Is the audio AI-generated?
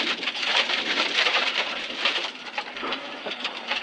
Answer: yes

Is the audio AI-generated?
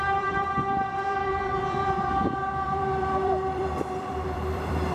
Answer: yes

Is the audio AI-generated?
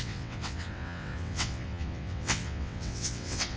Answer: yes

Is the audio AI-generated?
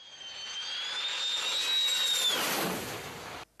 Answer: no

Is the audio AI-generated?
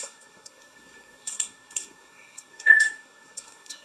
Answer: yes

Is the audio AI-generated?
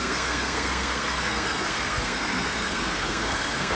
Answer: yes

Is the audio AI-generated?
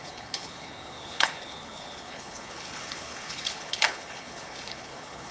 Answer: yes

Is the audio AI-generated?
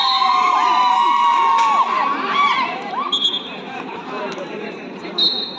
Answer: yes